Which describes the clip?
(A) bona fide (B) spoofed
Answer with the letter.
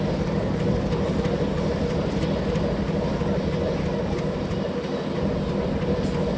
A